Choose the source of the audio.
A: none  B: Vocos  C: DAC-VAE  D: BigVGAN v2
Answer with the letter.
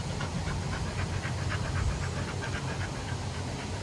A